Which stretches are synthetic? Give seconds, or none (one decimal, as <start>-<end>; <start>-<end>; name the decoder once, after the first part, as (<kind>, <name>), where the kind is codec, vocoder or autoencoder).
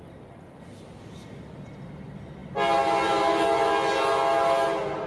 none